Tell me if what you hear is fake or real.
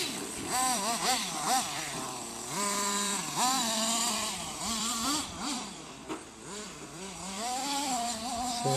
fake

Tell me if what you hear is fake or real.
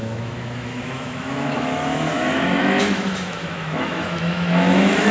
fake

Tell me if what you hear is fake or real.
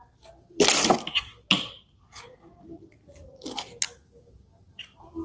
real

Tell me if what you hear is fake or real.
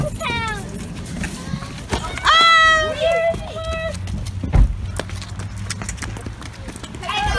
real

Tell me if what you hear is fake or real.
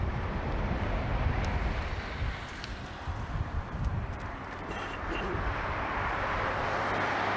fake